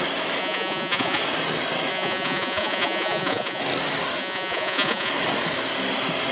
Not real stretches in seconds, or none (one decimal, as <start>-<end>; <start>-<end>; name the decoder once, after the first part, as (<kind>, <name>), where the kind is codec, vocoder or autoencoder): 0.4-1.2 (vocoder, Vocos); 1.9-3.6; 4.2-5.1